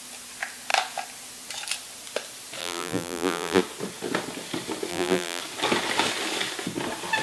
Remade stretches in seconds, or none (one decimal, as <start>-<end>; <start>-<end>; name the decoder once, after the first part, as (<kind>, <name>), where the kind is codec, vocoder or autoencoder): 2.6-3.6 (vocoder, BigVGAN v2); 4.9-5.4

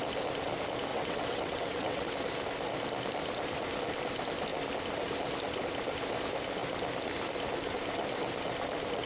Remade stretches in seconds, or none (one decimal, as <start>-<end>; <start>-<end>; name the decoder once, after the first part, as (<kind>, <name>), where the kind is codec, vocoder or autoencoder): 0.9-2.1 (vocoder, WaveNeXt)